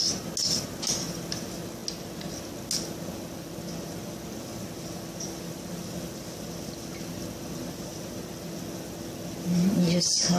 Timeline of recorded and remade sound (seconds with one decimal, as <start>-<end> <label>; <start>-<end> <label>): 0.0-10.4 recorded

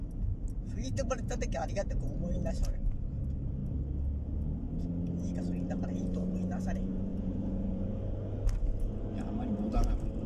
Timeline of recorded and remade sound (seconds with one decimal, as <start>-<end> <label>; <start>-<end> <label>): 0.0-0.6 recorded; 0.6-2.8 remade; 2.8-7.1 recorded; 7.1-8.0 remade; 8.0-10.3 recorded

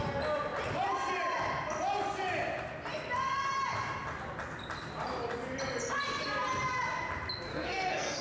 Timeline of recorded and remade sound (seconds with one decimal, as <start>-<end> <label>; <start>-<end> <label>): 0.0-7.5 recorded; 7.5-8.2 remade